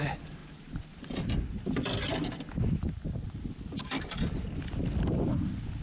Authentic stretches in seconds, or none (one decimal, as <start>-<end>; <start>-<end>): 0.0-5.8